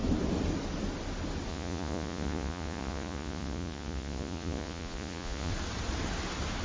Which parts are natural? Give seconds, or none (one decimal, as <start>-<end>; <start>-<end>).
0.0-1.5; 5.5-6.6